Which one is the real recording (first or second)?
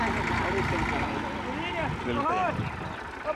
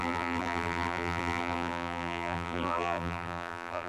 first